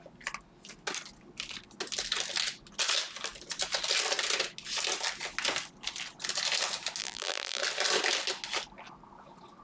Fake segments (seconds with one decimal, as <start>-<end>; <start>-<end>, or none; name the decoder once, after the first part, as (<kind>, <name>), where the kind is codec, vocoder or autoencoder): 7.0-7.6 (vocoder, BigVGAN v2)